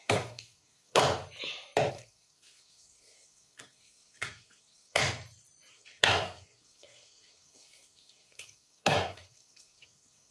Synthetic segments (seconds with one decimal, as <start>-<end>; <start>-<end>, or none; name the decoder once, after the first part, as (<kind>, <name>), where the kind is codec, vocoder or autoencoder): 0.0-1.0 (codec, SNAC); 1.9-5.0; 5.7-10.3